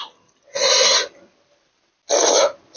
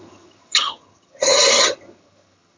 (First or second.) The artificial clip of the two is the second